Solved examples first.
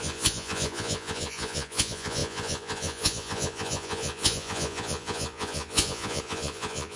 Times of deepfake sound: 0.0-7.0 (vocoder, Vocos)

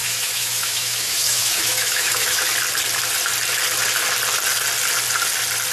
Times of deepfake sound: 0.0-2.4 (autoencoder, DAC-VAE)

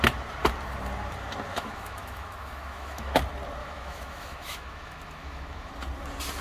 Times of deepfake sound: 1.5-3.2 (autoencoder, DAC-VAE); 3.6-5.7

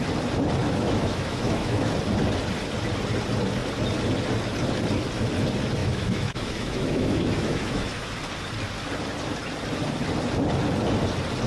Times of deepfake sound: 0.6-1.9 (autoencoder, DAC-VAE); 5.8-8.1